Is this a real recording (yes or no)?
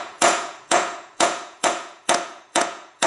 no